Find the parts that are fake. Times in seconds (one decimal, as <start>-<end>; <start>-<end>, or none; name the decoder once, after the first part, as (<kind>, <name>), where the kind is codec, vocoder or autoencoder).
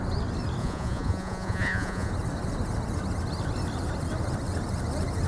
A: 0.6-2.1 (vocoder, Vocos)